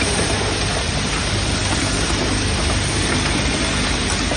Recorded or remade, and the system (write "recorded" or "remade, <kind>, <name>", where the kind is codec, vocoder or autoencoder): recorded